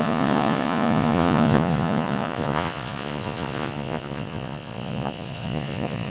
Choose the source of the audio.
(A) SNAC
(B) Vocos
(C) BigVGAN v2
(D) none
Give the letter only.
B